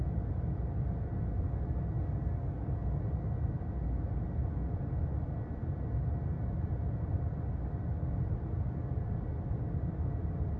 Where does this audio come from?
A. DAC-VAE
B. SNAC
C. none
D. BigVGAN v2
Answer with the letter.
C